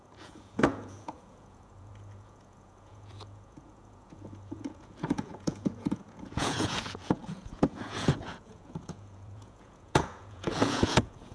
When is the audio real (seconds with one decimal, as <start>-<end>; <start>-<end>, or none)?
none